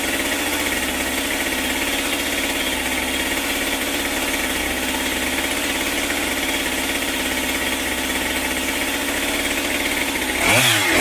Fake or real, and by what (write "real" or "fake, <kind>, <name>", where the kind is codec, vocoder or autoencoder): real